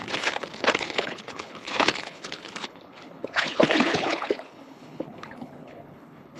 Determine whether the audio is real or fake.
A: fake